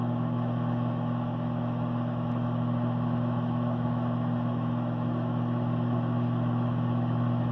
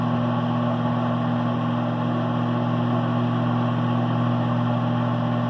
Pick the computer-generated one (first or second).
first